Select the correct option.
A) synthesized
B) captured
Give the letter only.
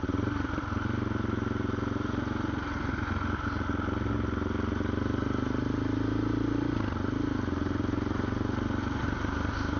B